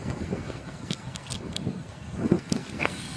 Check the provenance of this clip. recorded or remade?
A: remade